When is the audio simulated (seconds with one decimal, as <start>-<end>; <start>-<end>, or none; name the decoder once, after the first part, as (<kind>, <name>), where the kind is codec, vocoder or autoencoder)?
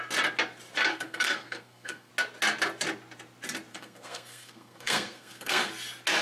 0.9-2.1 (codec, SNAC); 3.7-5.7